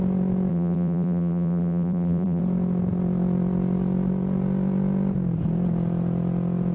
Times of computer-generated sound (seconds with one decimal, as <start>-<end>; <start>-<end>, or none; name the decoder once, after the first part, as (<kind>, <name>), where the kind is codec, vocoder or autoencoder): 0.5-2.4 (vocoder, BigVGAN v2)